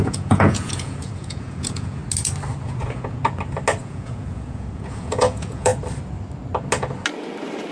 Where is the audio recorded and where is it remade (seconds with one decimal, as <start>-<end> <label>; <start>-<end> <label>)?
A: 0.0-2.0 remade; 2.0-2.6 recorded; 2.6-3.2 remade; 3.2-3.8 recorded; 3.8-5.7 remade; 5.7-7.7 recorded